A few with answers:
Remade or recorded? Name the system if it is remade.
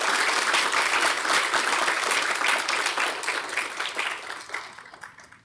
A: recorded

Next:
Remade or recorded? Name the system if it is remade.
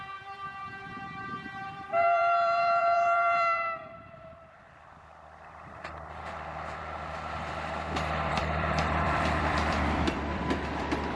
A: remade, vocoder, BigVGAN v2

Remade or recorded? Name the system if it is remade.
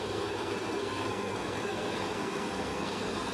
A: remade, codec, SNAC